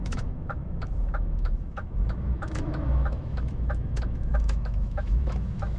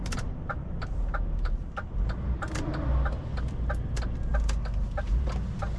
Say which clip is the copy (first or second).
first